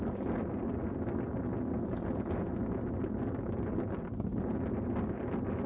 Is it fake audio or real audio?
real